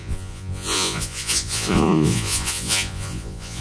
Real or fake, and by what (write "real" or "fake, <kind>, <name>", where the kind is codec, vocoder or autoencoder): fake, vocoder, Vocos